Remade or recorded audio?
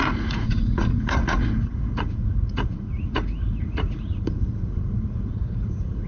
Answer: remade